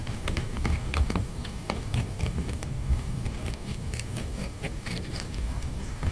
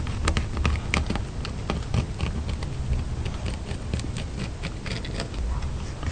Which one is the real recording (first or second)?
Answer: second